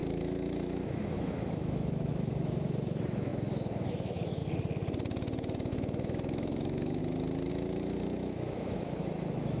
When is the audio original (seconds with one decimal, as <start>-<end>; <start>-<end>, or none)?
4.4-5.7; 7.0-7.5